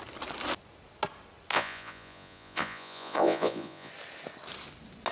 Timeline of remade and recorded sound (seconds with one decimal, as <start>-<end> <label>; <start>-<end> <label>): 0.0-1.5 recorded; 1.5-3.9 remade; 3.9-5.1 recorded